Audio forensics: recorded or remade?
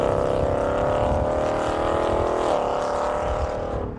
recorded